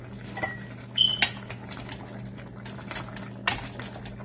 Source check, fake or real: real